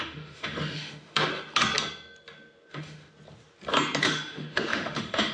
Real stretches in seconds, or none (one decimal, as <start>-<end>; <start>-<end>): 1.3-2.7; 3.1-4.0